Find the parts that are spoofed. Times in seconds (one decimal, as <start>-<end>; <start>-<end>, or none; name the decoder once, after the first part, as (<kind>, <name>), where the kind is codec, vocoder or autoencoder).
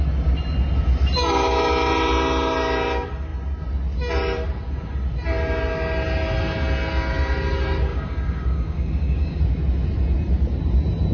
7.9-9.4 (codec, DAC)